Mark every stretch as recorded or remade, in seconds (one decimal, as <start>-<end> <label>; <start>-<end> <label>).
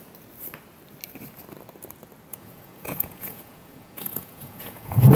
0.0-2.3 recorded; 2.3-5.2 remade